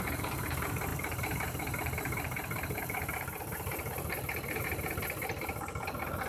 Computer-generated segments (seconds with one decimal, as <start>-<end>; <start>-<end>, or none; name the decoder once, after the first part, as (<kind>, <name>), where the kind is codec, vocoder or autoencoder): 0.0-6.3 (vocoder, BigVGAN v2)